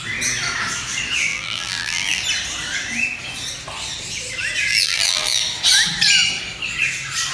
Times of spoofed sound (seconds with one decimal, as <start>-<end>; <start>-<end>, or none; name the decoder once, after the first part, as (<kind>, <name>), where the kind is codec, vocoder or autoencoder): 1.3-2.2 (vocoder, BigVGAN v2); 4.7-5.4